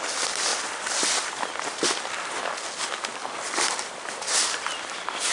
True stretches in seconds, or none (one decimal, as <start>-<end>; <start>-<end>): 0.0-0.5; 2.5-3.2; 4.4-5.3